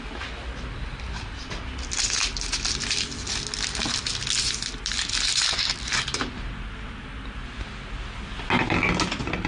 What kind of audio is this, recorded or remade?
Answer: recorded